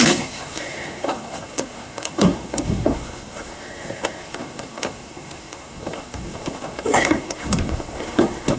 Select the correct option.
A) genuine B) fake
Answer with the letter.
B